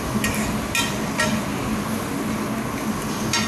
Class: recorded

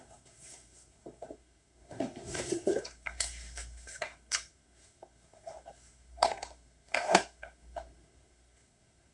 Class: remade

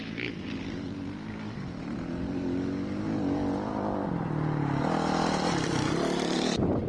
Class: recorded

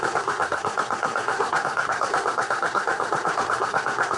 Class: remade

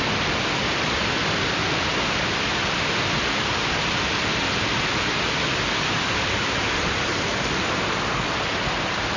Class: recorded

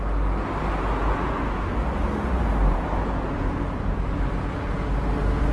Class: recorded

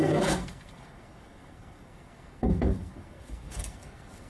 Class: remade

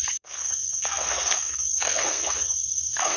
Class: remade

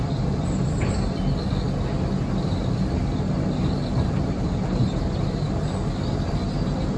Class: recorded